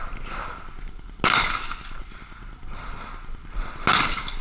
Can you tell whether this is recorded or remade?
recorded